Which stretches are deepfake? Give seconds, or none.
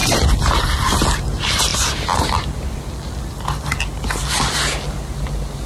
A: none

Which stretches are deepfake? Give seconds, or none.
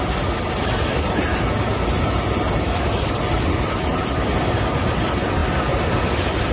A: none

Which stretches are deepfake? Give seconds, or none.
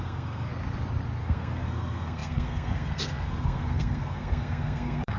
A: 0.0-0.5; 1.2-5.2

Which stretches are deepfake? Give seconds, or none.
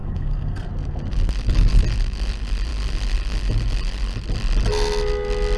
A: 0.0-0.7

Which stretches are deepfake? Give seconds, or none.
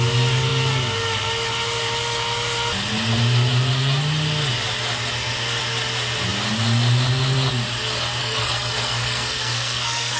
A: 8.2-10.2